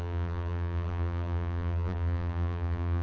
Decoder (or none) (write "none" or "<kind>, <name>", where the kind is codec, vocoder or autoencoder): vocoder, BigVGAN v2